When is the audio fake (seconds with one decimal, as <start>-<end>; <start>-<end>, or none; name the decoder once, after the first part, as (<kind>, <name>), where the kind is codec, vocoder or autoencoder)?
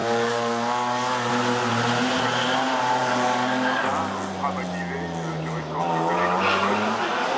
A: 0.0-1.3 (codec, DAC); 3.0-3.8